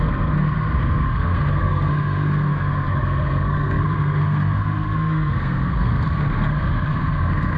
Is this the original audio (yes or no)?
no